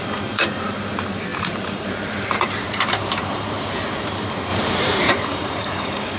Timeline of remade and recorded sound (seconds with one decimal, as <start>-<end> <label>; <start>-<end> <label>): 0.0-6.2 remade

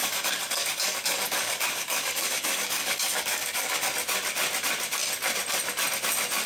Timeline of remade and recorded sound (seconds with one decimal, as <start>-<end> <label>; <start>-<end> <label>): 0.0-3.9 remade; 3.9-6.5 recorded

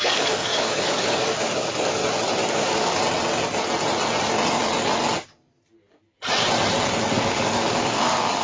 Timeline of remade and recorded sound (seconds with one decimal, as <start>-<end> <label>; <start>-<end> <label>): 0.0-2.0 remade; 2.0-2.5 recorded; 2.5-3.0 remade; 3.0-7.2 recorded; 7.2-8.4 remade

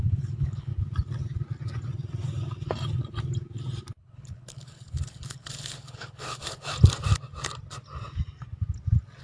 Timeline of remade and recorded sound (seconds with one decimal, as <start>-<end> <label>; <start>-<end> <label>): 0.0-0.7 remade; 0.7-3.9 recorded; 3.9-6.7 remade; 6.7-9.2 recorded

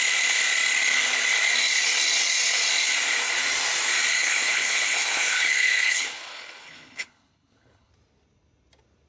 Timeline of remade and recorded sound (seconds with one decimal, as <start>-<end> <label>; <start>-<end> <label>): 0.0-4.2 recorded; 4.2-7.9 remade; 7.9-9.1 recorded

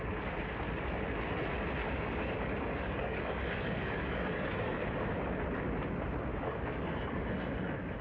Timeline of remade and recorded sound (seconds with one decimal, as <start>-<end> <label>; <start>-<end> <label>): 0.0-1.8 recorded; 1.8-5.1 remade; 5.1-6.3 recorded; 6.3-7.2 remade; 7.2-8.0 recorded